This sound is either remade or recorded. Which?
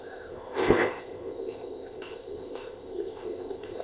remade